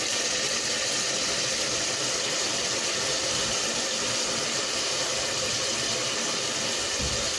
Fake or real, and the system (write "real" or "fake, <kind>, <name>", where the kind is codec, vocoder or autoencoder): real